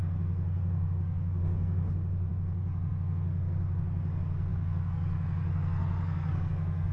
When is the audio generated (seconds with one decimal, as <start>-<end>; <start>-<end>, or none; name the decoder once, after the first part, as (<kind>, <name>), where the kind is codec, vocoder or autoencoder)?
0.0-6.9 (codec, SNAC)